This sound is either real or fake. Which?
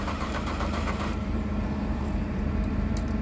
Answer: fake